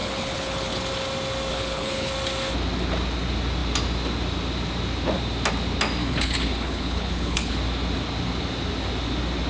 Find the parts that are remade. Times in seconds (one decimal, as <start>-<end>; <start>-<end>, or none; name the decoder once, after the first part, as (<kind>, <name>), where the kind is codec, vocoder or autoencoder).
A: 0.0-0.8 (codec, HILCodec); 1.5-2.1; 6.0-7.6